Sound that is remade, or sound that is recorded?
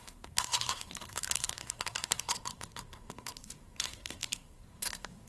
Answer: remade